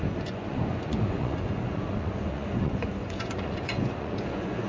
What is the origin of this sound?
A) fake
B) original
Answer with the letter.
A